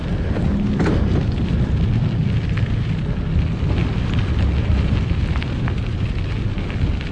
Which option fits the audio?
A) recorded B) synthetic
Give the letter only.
A